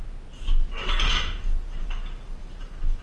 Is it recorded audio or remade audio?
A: recorded